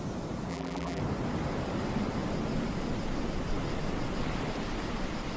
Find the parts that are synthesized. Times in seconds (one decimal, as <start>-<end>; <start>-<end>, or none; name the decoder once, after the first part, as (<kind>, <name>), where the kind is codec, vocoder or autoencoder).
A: 0.5-1.0 (vocoder, BigVGAN v2)